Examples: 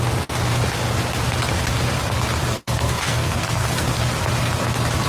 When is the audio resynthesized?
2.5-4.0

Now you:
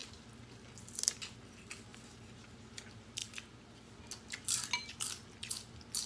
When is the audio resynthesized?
1.9-2.6

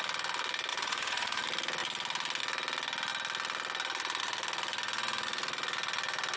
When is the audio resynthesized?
0.7-1.4